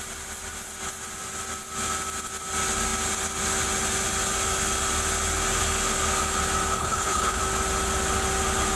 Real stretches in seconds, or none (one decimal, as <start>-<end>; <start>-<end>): 0.0-6.8; 7.4-8.7